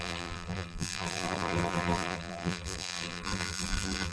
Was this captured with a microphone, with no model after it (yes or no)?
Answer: no